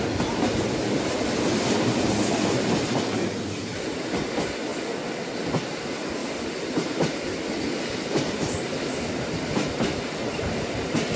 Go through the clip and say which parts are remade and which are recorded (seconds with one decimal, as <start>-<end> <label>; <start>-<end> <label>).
0.0-6.2 recorded; 6.2-11.2 remade